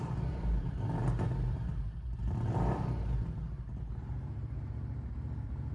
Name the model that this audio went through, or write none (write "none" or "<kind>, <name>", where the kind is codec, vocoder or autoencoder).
vocoder, BigVGAN v2